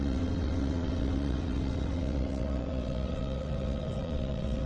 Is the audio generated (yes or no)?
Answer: yes